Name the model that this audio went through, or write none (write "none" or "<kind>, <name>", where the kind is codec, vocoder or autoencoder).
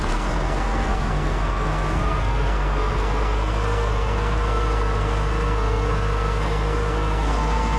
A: codec, SNAC